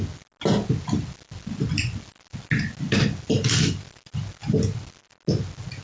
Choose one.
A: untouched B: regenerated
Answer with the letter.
A